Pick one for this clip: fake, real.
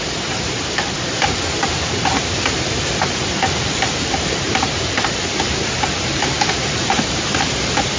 fake